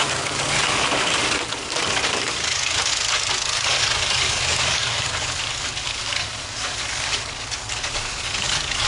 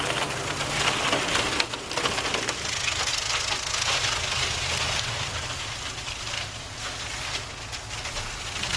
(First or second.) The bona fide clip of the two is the second